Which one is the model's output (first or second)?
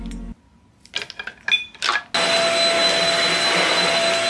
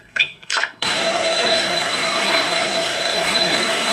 second